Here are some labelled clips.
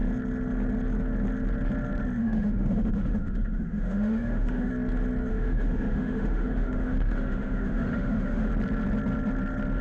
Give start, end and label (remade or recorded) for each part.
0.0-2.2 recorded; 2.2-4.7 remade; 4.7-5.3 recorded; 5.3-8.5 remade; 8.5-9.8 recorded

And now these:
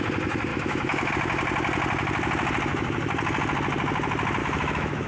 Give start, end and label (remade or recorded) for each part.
0.0-0.5 recorded; 0.5-1.1 remade; 1.1-4.4 recorded; 4.4-5.1 remade

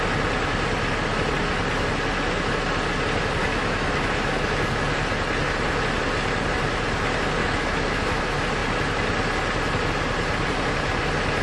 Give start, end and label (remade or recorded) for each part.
0.0-3.4 recorded; 3.4-4.7 remade; 4.7-7.4 recorded; 7.4-8.2 remade; 8.2-11.4 recorded

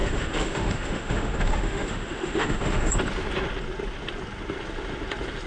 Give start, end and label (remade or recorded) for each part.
0.0-2.9 remade; 2.9-5.5 recorded

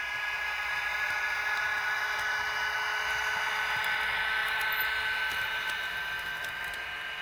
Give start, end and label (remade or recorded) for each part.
0.0-7.2 recorded

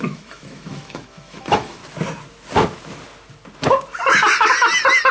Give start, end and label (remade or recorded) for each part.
0.0-1.8 remade; 1.8-5.1 recorded

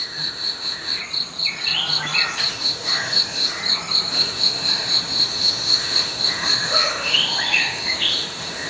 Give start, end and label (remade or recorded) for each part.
0.0-1.0 remade; 1.0-2.5 recorded; 2.5-3.6 remade; 3.6-4.1 recorded; 4.1-8.7 remade

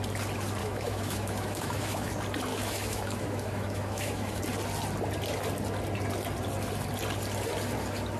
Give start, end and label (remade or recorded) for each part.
0.0-0.6 recorded; 0.6-2.1 remade; 2.1-2.5 recorded; 2.5-4.4 remade; 4.4-8.2 recorded